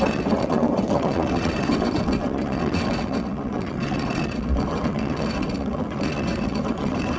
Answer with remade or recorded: remade